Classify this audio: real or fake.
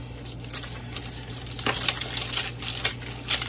real